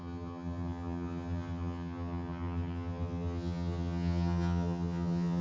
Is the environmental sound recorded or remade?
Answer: remade